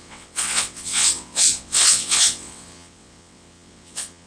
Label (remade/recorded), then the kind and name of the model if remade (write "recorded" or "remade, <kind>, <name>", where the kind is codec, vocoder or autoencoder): remade, vocoder, WaveNeXt